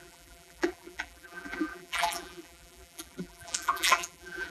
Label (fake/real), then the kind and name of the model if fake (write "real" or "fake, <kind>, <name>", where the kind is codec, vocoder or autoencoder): fake, vocoder, BigVGAN v2